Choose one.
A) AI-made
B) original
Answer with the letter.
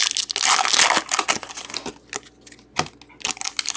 B